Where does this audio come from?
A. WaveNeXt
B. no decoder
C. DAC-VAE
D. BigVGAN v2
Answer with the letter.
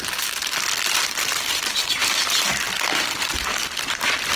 B